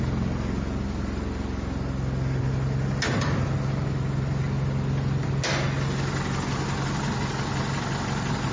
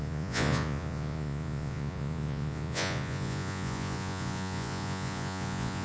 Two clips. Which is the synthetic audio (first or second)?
second